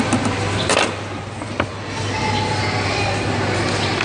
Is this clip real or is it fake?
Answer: real